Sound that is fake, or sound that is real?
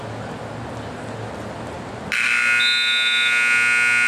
real